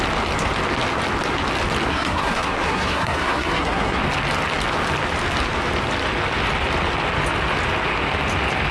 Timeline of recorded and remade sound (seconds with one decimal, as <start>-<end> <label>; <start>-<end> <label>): 0.0-1.9 recorded; 1.9-4.0 remade; 4.0-8.7 recorded